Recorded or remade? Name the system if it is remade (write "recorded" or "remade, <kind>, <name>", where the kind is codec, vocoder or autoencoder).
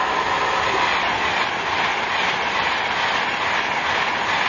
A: recorded